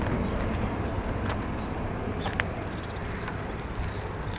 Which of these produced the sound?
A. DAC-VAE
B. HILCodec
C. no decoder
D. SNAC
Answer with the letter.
C